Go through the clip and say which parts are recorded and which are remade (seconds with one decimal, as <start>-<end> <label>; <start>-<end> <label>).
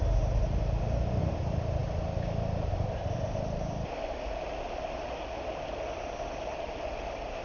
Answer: 0.0-7.4 recorded